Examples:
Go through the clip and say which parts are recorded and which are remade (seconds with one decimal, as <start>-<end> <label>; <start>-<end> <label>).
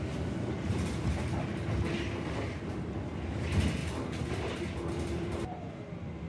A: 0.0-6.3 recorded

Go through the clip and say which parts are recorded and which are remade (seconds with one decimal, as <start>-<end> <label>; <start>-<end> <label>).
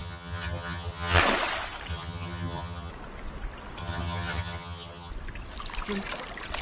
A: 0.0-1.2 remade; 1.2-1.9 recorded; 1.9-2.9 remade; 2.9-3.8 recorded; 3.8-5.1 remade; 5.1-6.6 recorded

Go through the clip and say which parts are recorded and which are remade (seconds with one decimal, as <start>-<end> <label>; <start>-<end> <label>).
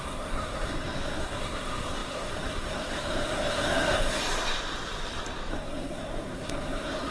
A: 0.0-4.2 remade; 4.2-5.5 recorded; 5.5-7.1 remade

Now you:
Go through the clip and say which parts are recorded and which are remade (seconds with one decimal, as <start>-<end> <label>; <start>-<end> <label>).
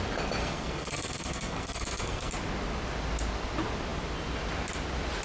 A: 0.0-0.4 recorded; 0.4-2.3 remade; 2.3-5.2 recorded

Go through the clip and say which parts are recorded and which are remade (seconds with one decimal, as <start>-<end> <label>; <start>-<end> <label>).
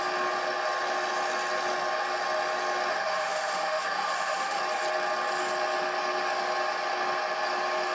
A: 0.0-2.9 recorded; 2.9-4.6 remade; 4.6-7.9 recorded